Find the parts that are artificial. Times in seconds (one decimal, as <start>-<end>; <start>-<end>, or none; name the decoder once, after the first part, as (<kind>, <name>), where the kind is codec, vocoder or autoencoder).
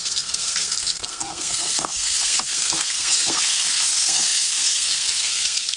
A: 0.0-5.8 (codec, SNAC)